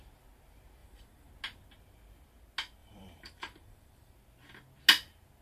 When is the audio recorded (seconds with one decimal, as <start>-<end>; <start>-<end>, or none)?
0.0-0.8; 1.3-2.8; 4.1-5.4